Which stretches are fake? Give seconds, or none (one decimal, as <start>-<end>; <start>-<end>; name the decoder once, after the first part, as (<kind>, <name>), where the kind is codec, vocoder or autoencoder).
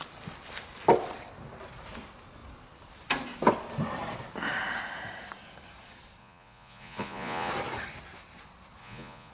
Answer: 6.2-7.5 (vocoder, Vocos); 8.8-9.3